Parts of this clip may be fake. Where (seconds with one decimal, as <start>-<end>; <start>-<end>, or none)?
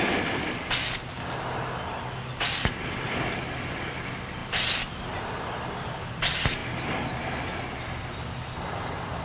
none